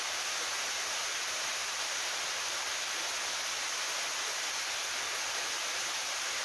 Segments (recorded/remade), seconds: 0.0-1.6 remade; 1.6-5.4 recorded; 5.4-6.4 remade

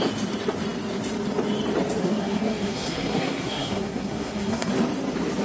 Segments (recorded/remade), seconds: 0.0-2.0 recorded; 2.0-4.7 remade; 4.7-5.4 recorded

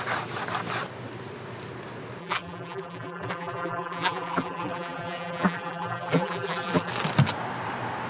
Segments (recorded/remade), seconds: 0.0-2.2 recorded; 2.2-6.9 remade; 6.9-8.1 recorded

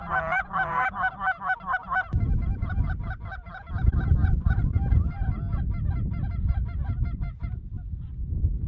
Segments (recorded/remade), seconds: 0.0-8.7 recorded